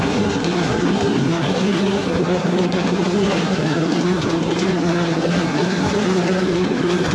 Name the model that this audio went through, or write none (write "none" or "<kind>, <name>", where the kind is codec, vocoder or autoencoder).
codec, SNAC